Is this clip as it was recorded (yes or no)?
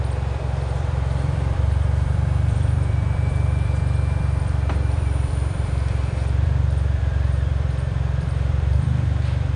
no